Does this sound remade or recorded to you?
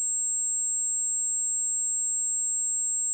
recorded